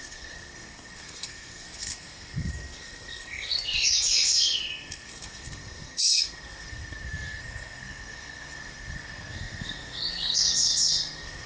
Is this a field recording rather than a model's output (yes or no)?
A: no